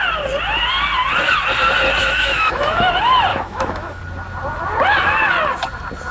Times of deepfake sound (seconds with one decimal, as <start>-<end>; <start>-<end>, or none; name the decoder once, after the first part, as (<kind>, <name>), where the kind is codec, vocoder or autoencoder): 2.0-2.9 (autoencoder, DAC-VAE); 3.3-4.0